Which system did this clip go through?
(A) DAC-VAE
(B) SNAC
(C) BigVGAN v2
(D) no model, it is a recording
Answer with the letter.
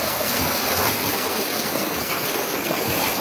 B